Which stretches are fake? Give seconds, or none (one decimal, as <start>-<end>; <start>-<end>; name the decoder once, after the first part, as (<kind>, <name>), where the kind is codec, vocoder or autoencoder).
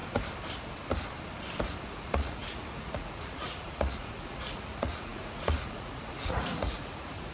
1.8-7.3 (vocoder, Vocos)